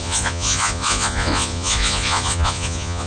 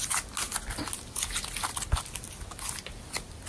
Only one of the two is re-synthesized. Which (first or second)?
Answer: first